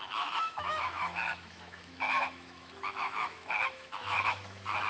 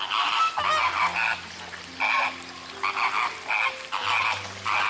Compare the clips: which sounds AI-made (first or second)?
first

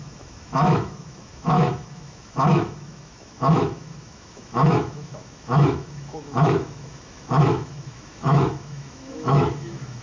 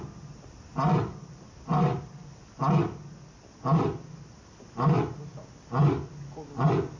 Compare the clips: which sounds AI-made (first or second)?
first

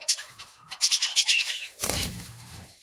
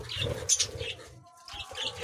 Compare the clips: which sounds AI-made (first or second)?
first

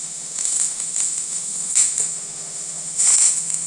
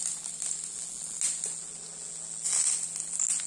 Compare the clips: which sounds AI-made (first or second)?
first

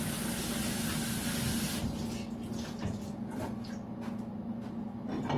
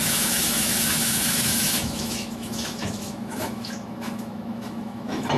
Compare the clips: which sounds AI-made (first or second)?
second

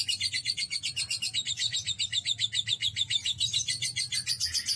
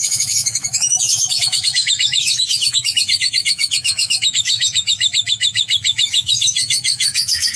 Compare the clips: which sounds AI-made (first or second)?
second